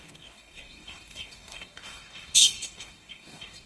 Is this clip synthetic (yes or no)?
yes